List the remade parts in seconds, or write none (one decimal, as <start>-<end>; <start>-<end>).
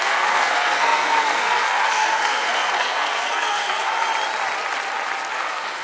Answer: 0.0-3.9; 5.3-5.8